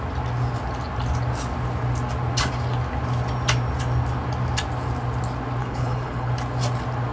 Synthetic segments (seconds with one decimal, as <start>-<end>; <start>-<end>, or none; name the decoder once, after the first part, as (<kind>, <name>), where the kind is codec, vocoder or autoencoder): 5.6-6.3 (codec, HILCodec)